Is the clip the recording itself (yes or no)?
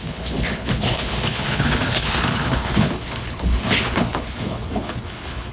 no